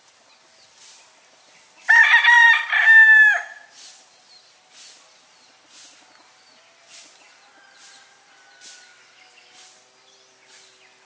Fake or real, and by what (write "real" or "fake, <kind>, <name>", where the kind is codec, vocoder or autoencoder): real